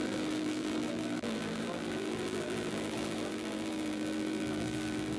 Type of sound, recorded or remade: remade